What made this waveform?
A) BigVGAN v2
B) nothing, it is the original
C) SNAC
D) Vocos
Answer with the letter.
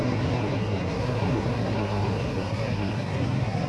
C